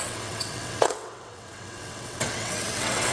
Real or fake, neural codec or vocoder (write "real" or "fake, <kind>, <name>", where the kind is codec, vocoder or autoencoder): fake, vocoder, WaveNeXt